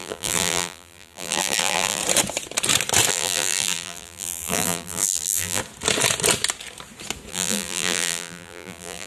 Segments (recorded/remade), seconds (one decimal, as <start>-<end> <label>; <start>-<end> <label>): 0.0-2.0 remade; 2.0-3.1 recorded; 3.1-5.6 remade; 5.6-7.3 recorded; 7.3-9.1 remade